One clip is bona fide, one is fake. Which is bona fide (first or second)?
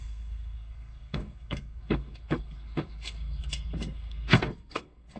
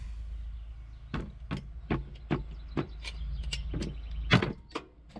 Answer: second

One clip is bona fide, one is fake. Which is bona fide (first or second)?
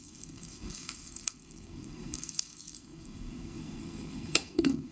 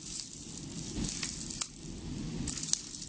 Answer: second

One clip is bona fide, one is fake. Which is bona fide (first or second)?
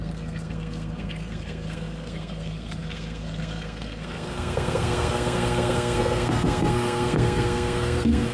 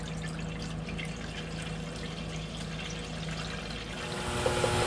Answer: second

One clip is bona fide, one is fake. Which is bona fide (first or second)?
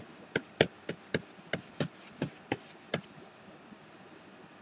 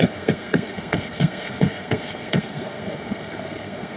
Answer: first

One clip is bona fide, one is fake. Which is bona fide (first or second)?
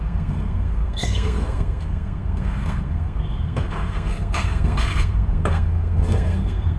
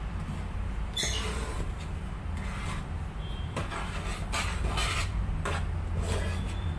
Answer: second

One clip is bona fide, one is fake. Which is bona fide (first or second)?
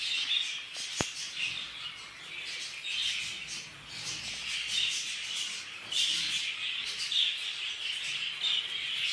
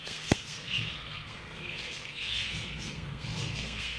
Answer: first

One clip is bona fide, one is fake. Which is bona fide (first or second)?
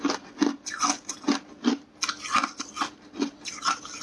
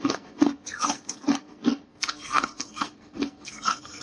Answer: first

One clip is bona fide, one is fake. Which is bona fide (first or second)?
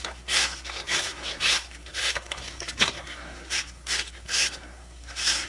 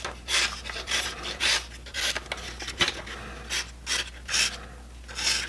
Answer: second